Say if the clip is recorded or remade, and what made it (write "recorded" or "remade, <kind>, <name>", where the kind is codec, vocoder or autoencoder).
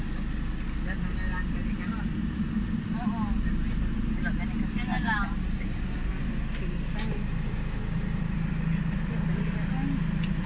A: recorded